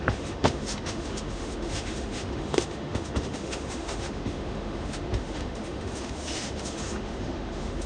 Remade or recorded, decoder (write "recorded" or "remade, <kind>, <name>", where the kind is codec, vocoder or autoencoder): remade, autoencoder, DAC-VAE